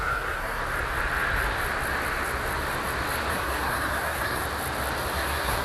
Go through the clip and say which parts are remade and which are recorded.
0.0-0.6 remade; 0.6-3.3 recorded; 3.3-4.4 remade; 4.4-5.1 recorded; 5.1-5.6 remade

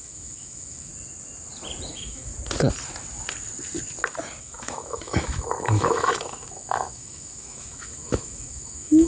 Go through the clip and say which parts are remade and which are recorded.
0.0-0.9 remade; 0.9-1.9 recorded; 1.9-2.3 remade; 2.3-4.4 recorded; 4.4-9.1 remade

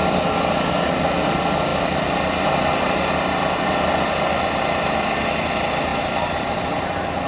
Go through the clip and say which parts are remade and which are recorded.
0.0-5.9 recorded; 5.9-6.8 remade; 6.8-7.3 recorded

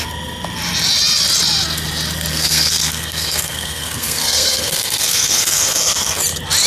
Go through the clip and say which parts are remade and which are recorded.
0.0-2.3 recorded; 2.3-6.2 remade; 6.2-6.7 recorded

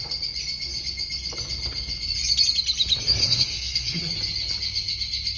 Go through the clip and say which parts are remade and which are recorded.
0.0-3.2 recorded; 3.2-4.0 remade; 4.0-5.4 recorded